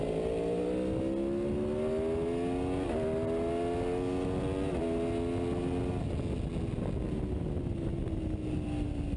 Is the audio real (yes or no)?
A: yes